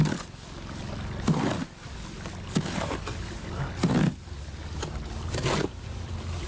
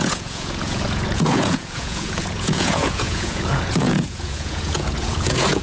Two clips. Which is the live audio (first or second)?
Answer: first